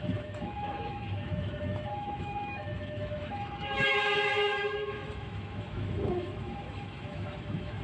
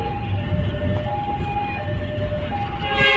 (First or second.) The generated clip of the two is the first